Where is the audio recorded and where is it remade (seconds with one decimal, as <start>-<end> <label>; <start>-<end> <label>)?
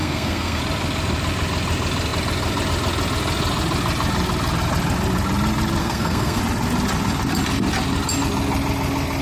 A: 0.0-0.6 remade; 0.6-5.8 recorded; 5.8-6.4 remade; 6.4-9.2 recorded